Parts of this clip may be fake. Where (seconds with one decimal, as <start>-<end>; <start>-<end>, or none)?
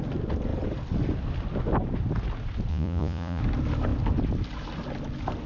2.7-3.4